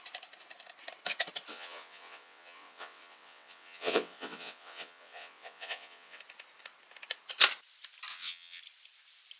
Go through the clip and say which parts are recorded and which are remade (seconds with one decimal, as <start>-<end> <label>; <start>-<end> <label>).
0.0-1.5 recorded; 1.5-6.2 remade; 6.2-8.1 recorded; 8.1-8.6 remade; 8.6-9.4 recorded